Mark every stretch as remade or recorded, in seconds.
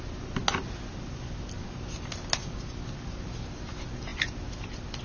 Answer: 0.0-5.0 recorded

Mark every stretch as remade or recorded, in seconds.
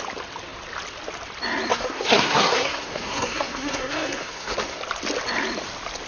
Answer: 0.0-1.7 recorded; 1.7-4.8 remade; 4.8-6.1 recorded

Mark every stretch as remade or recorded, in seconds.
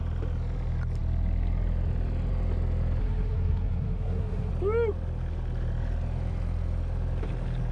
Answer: 0.0-3.0 recorded; 3.0-4.5 remade; 4.5-7.7 recorded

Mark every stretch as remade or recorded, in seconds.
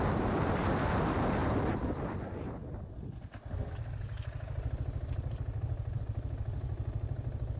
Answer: 0.0-7.6 recorded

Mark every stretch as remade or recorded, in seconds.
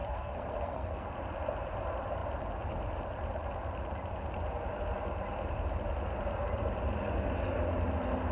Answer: 0.0-1.1 remade; 1.1-8.3 recorded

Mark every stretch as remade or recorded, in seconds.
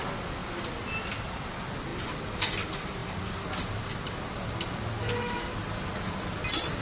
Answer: 0.0-6.8 recorded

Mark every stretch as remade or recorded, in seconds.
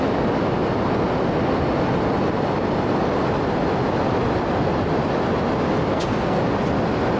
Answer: 0.0-5.9 recorded; 5.9-6.4 remade; 6.4-7.2 recorded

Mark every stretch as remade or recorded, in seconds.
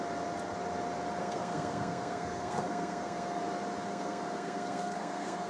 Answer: 0.0-1.2 recorded; 1.2-3.4 remade; 3.4-3.9 recorded; 3.9-5.5 remade